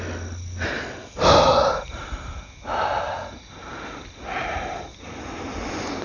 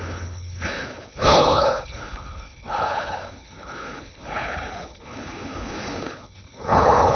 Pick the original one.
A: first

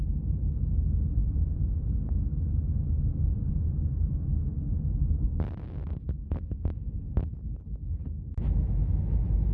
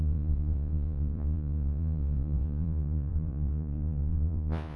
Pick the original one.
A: first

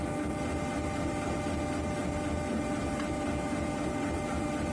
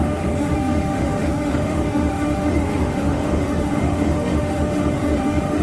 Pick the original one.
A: first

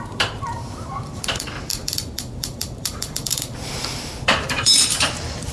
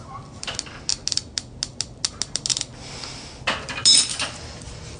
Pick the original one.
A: second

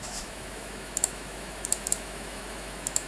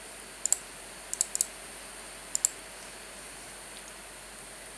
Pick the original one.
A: second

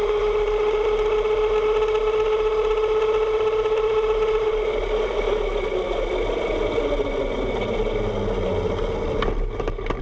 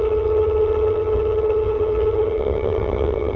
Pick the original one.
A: first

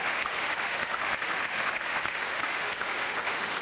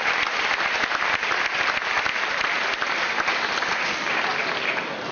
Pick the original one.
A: second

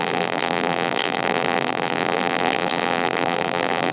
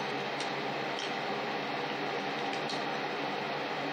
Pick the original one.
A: second